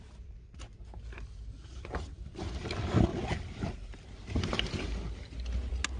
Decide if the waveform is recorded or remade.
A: recorded